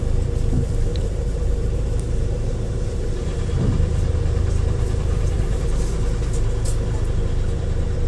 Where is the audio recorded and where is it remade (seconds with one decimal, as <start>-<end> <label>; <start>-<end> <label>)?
0.0-0.9 recorded; 0.9-5.6 remade; 5.6-8.1 recorded